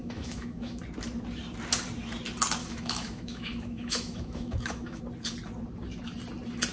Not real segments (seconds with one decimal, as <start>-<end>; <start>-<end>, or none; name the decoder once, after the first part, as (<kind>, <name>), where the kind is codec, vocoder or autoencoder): 0.0-0.8 (autoencoder, DAC-VAE); 2.6-5.0